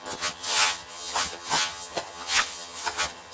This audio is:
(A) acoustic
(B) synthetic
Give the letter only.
B